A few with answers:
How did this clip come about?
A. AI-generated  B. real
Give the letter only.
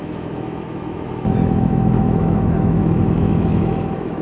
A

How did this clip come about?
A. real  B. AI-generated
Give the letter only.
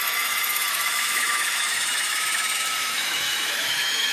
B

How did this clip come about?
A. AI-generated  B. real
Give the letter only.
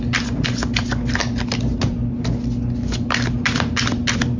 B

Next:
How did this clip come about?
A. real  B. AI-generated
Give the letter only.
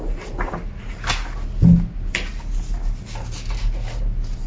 A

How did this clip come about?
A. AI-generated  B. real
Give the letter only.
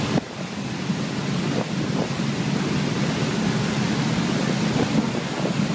B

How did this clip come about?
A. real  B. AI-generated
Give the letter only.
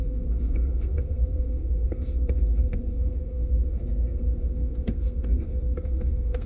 B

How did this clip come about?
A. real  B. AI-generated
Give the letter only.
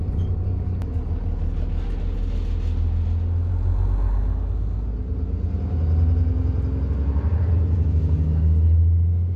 A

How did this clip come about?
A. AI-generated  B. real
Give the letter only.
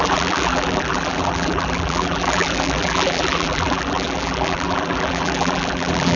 A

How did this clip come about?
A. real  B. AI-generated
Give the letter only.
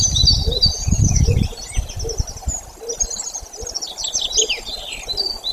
A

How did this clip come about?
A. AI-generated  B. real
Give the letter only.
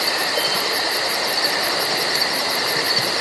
B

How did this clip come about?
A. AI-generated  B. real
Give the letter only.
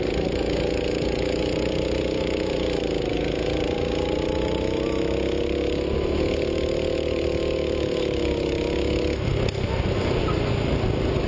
B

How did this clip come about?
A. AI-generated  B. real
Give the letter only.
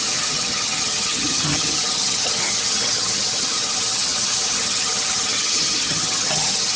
A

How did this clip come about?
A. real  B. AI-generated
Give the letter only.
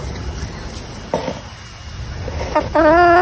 A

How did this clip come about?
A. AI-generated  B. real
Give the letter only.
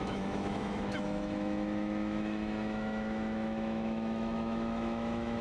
A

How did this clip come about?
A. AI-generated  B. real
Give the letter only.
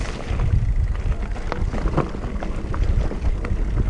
B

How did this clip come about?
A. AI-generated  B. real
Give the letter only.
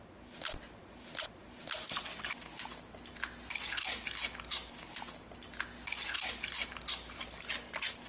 B